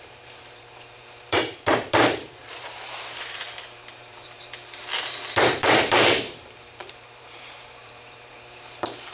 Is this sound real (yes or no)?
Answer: no